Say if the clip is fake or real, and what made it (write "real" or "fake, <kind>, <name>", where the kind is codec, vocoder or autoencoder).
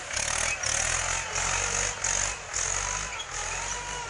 real